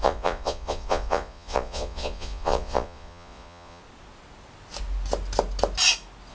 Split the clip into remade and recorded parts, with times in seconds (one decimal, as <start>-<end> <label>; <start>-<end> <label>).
0.0-3.8 remade; 3.8-6.3 recorded